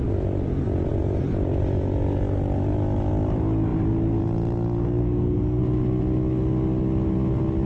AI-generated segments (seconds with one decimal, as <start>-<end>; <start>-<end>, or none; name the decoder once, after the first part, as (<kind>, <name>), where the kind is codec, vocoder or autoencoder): 5.0-5.6 (codec, SNAC)